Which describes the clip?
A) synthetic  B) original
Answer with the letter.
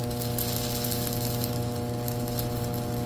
B